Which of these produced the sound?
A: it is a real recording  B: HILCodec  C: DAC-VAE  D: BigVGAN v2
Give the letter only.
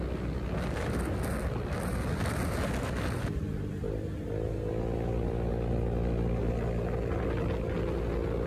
A